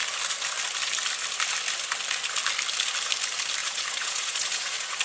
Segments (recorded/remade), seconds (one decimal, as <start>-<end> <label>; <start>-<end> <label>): 0.0-3.6 recorded; 3.6-5.0 remade